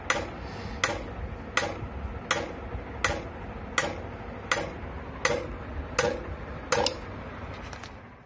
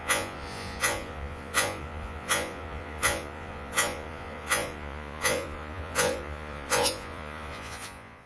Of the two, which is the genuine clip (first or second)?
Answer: first